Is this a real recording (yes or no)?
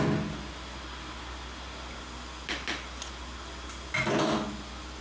yes